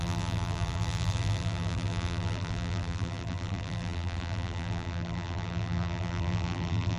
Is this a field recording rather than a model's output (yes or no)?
no